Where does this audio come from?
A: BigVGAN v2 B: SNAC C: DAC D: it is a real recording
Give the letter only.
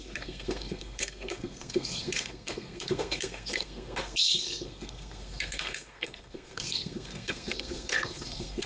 B